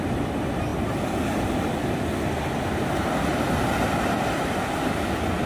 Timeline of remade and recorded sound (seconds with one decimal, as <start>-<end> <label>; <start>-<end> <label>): 0.0-5.5 recorded